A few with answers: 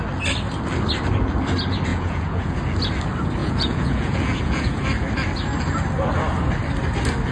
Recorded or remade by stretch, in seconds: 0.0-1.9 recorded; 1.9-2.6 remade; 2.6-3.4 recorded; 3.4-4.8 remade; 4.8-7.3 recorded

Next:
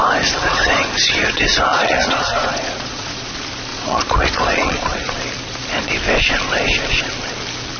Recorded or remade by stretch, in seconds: 0.0-1.7 recorded; 1.7-3.3 remade; 3.3-3.7 recorded; 3.7-5.1 remade; 5.1-7.8 recorded

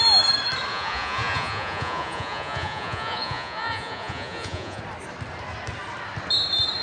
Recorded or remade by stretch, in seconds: 0.0-0.7 recorded; 0.7-4.8 remade; 4.8-6.8 recorded